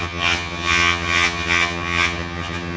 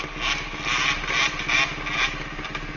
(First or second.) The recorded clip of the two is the second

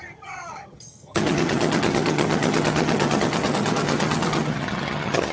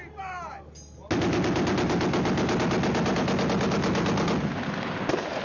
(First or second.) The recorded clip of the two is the second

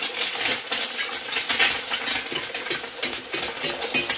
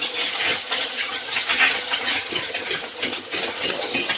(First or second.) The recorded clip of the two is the first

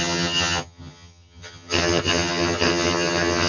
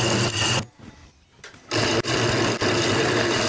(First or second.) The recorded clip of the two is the second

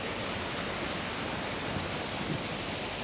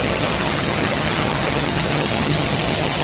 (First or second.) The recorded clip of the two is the first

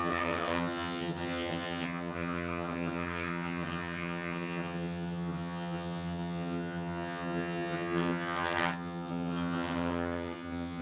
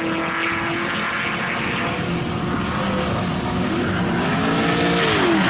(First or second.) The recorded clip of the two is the second